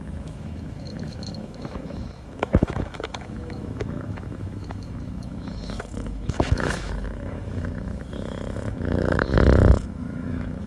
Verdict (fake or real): fake